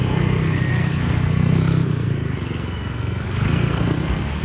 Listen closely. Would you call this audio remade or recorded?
remade